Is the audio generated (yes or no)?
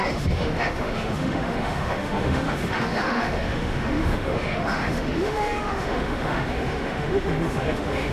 yes